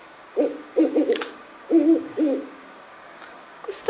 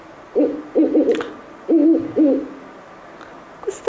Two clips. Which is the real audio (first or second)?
second